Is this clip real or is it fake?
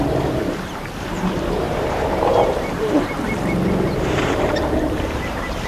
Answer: fake